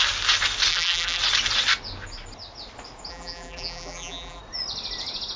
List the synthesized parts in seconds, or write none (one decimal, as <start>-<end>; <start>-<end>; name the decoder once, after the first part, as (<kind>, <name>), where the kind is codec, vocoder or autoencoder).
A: 0.7-1.2 (vocoder, BigVGAN v2); 3.1-4.4